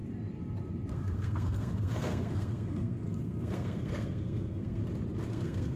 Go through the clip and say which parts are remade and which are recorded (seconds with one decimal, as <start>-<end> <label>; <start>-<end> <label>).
0.0-0.9 recorded; 0.9-4.8 remade; 4.8-5.3 recorded; 5.3-5.8 remade